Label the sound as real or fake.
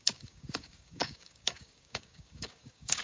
fake